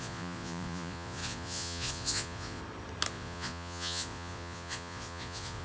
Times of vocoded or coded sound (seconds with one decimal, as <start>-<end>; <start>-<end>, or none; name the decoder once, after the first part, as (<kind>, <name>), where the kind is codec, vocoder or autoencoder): 0.0-2.6 (vocoder, Vocos); 3.1-5.6